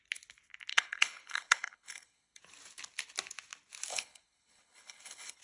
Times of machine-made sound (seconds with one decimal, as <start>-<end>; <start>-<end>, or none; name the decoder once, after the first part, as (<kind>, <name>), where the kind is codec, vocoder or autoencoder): 0.7-2.4 (codec, HILCodec); 3.9-5.4